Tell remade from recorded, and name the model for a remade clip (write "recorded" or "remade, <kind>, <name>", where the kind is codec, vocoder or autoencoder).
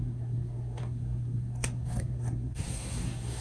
remade, codec, SNAC